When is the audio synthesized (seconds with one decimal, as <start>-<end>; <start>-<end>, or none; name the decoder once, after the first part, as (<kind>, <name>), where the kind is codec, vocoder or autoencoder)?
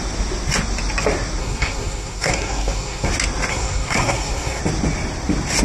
1.4-3.1 (codec, SNAC); 3.5-4.6